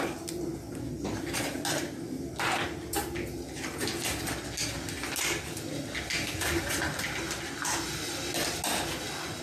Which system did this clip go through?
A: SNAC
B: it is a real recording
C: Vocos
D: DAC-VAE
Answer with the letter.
B